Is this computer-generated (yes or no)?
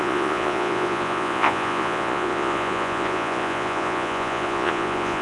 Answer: yes